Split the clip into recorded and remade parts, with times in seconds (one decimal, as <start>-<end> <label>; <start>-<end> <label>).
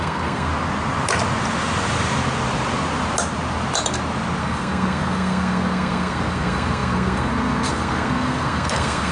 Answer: 0.0-0.5 remade; 0.5-4.4 recorded; 4.4-9.1 remade